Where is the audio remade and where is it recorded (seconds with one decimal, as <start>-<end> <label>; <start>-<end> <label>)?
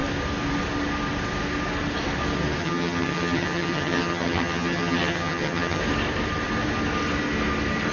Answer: 0.0-2.6 recorded; 2.6-5.8 remade; 5.8-7.9 recorded